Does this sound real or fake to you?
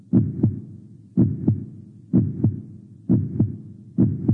real